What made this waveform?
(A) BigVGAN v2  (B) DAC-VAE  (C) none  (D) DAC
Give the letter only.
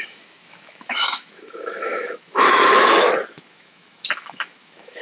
B